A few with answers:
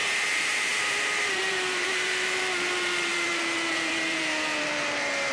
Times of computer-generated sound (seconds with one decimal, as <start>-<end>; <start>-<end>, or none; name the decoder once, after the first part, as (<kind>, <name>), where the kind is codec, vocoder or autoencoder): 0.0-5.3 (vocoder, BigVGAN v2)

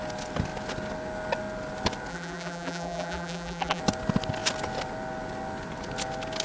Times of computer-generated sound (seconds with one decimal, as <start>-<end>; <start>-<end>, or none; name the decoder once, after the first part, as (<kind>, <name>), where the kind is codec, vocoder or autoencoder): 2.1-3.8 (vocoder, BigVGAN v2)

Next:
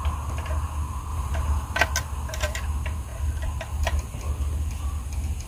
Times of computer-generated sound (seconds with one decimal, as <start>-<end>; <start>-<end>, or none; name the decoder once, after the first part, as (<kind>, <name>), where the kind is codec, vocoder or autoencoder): 1.1-1.8 (vocoder, BigVGAN v2)

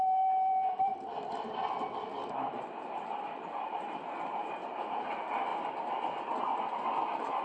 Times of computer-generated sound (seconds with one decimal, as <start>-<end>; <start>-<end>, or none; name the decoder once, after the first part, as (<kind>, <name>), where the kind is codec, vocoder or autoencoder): 0.0-0.9 (vocoder, BigVGAN v2); 2.3-5.5; 6.4-7.4

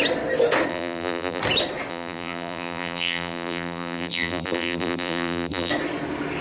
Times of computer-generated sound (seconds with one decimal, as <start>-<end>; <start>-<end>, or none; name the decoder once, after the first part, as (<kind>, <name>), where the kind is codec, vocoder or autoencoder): 0.7-1.4 (vocoder, BigVGAN v2); 1.9-5.7

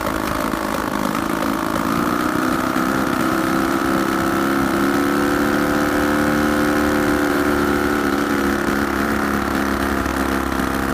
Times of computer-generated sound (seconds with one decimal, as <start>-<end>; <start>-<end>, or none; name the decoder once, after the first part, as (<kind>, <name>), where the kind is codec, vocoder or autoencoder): 0.0-3.8 (vocoder, BigVGAN v2); 7.3-10.1